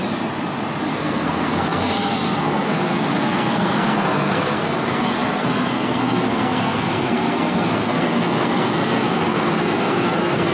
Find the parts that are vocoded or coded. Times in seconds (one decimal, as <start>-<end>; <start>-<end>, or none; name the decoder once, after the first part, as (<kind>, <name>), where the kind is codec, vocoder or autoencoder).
0.9-10.5 (codec, SNAC)